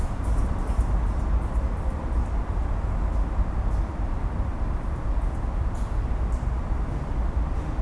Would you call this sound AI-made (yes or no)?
yes